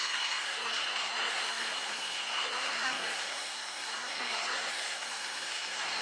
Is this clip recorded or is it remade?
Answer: remade